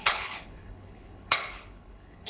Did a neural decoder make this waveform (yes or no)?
yes